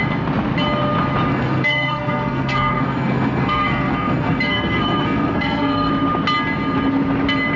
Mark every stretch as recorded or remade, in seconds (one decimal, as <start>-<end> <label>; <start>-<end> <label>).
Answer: 0.0-1.3 recorded; 1.3-5.9 remade; 5.9-7.6 recorded